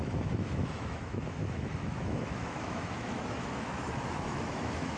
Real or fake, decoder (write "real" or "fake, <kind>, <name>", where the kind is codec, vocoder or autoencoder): fake, autoencoder, DAC-VAE